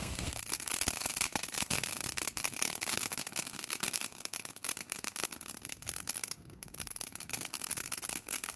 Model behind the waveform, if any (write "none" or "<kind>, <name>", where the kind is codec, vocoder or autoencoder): codec, SNAC